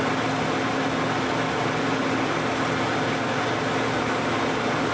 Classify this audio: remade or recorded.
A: recorded